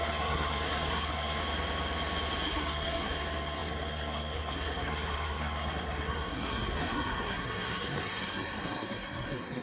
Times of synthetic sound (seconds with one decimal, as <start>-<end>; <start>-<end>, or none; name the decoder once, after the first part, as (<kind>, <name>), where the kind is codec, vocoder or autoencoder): 0.0-1.4 (codec, SNAC); 2.4-9.6